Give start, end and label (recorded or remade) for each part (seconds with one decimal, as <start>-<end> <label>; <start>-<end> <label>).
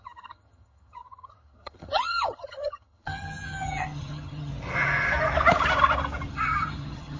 0.0-4.5 remade; 4.5-6.3 recorded; 6.3-7.2 remade